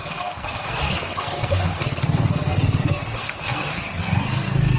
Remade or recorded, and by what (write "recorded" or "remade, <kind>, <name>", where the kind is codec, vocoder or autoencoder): remade, codec, SNAC